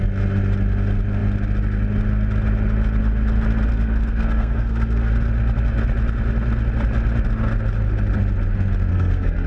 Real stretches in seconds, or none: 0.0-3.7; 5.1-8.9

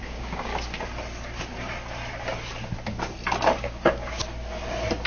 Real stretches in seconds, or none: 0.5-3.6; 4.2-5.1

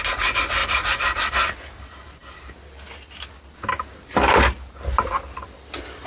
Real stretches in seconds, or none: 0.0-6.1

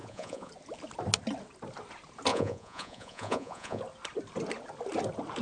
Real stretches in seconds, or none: 0.5-2.3; 3.8-5.4

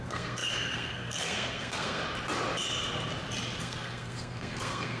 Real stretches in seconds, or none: 2.0-3.6

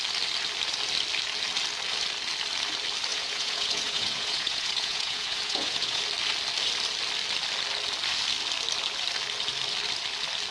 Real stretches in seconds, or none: 0.0-3.1; 6.0-10.5

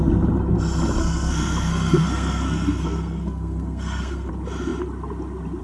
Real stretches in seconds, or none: 0.0-1.0; 4.3-5.6

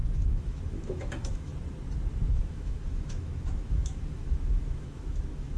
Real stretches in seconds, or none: 1.5-2.3